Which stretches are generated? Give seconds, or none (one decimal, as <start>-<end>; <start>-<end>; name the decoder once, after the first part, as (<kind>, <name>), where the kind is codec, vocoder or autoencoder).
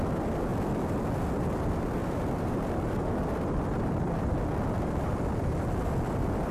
none